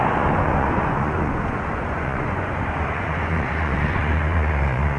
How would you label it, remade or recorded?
remade